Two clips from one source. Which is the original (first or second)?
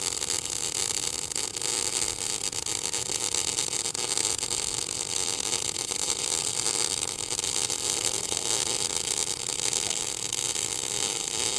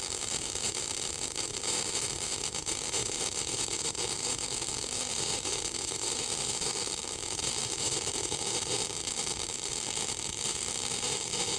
first